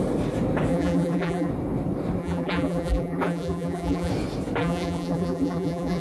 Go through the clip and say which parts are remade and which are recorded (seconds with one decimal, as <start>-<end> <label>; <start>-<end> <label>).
0.0-0.7 recorded; 0.7-1.5 remade; 1.5-2.2 recorded; 2.2-4.1 remade; 4.1-4.6 recorded; 4.6-6.0 remade